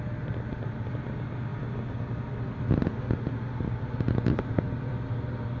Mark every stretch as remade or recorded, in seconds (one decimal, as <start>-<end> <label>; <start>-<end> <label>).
0.0-5.6 recorded